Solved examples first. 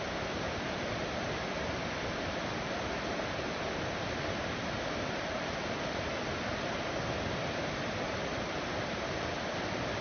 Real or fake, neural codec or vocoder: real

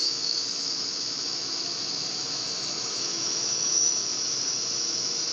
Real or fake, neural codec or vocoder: fake, autoencoder, DAC-VAE